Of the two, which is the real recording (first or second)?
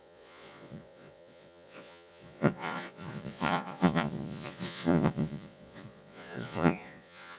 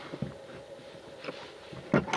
second